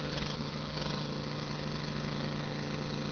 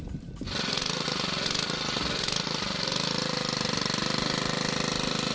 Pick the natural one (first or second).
second